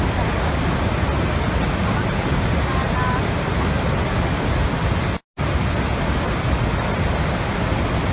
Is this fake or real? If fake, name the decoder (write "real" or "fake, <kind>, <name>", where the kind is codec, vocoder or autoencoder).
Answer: real